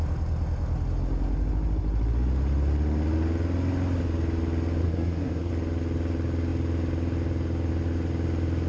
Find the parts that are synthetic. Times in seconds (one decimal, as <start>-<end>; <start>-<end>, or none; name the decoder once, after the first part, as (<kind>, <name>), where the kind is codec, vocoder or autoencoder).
4.8-5.5 (codec, SNAC)